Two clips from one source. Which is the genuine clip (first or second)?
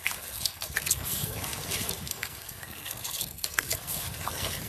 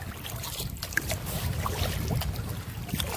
second